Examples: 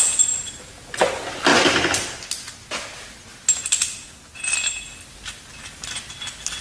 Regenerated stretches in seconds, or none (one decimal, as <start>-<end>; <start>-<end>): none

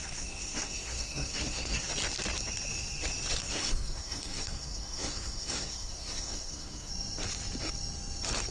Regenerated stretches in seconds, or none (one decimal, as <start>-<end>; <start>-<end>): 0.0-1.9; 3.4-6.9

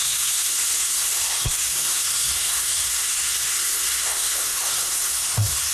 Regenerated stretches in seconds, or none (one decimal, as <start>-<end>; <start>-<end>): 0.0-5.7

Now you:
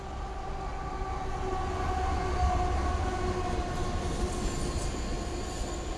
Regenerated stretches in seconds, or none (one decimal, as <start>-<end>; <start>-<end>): none

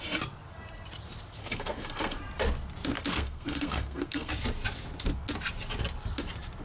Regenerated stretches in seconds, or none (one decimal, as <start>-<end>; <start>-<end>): 1.4-2.2; 3.1-4.3

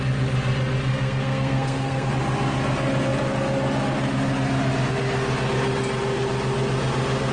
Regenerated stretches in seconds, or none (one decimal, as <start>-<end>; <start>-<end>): 0.9-2.1

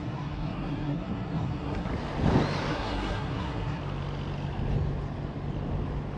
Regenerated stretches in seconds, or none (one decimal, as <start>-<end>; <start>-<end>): 0.0-1.9; 2.7-3.8

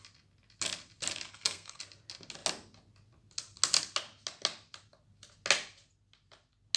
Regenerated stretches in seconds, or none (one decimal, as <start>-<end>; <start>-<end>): 1.3-1.8